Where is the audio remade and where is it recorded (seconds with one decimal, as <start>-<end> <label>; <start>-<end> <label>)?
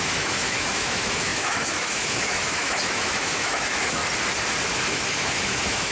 0.0-4.0 remade; 4.0-4.9 recorded; 4.9-5.9 remade